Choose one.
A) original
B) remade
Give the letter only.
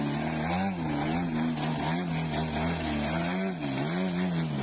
A